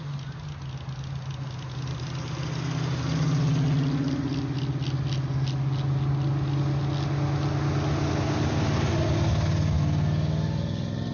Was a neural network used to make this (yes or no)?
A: no